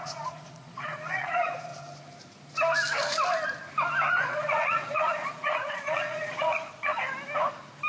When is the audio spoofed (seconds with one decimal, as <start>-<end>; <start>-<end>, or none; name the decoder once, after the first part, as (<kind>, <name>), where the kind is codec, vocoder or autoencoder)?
0.0-1.7 (vocoder, Vocos); 4.1-6.9